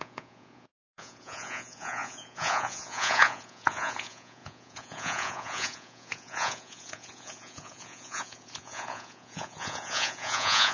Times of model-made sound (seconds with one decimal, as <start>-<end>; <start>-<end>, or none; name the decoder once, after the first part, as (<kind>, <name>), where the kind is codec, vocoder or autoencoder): 0.0-10.7 (vocoder, Vocos)